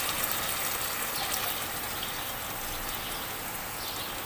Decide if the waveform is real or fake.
real